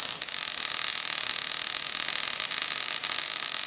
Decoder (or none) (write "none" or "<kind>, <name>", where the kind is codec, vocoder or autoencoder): none